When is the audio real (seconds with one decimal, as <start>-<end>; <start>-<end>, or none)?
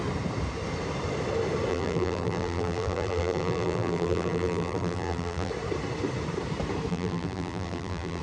0.0-1.7; 5.5-6.9